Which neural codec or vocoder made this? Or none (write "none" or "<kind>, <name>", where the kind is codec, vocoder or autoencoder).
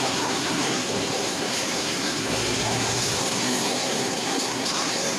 codec, SNAC